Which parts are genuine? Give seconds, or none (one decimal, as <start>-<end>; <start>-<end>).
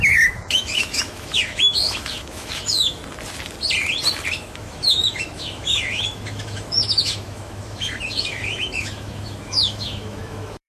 3.0-4.3